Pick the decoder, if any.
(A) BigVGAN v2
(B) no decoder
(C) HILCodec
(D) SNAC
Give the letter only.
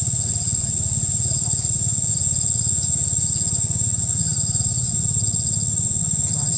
B